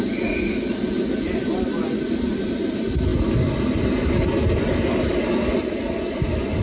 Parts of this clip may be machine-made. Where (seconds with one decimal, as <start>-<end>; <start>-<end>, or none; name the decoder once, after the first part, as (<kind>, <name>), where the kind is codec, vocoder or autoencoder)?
none